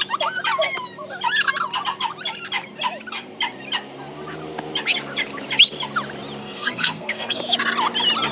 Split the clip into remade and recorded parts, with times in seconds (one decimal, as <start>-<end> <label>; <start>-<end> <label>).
0.0-6.4 recorded; 6.4-7.4 remade; 7.4-8.3 recorded